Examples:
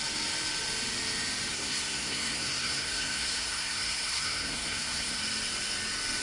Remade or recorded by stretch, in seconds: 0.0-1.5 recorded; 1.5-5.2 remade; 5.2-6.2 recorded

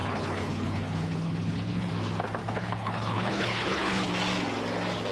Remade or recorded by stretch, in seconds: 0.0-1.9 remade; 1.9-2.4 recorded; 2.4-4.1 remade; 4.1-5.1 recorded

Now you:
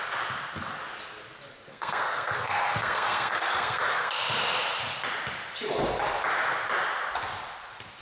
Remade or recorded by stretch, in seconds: 0.0-1.7 recorded; 1.7-4.1 remade; 4.1-8.0 recorded

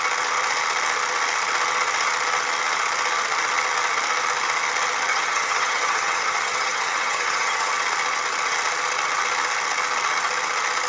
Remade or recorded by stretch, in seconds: 0.0-5.1 recorded; 5.1-7.7 remade; 7.7-10.9 recorded

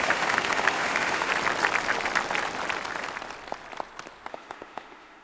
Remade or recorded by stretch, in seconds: 0.0-1.3 remade; 1.3-4.3 recorded; 4.3-5.2 remade